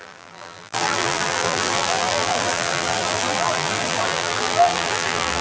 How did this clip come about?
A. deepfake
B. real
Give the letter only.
A